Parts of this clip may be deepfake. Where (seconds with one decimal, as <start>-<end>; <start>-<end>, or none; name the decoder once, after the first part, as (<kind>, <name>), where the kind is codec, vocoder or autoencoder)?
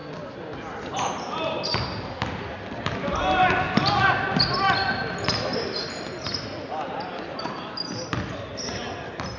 none